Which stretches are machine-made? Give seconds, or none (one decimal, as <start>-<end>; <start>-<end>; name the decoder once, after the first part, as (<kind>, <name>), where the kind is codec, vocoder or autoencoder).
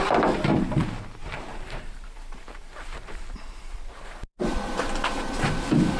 1.2-4.8 (vocoder, BigVGAN v2)